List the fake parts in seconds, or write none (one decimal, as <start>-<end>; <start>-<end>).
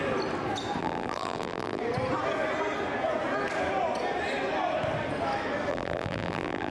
0.8-1.8; 5.7-6.7